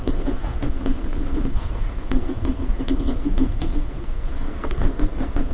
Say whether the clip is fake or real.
fake